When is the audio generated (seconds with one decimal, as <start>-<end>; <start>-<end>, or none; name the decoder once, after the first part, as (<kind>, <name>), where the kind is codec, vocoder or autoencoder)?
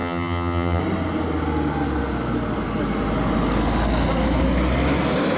0.0-0.8 (vocoder, HiFi-GAN)